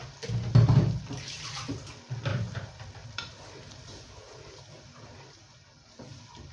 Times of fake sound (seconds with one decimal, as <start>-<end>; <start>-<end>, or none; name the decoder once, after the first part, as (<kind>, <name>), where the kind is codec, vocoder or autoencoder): 2.3-6.5 (vocoder, BigVGAN v2)